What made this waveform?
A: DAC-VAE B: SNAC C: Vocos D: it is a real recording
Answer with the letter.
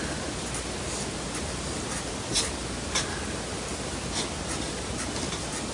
D